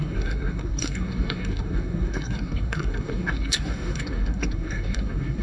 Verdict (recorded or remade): remade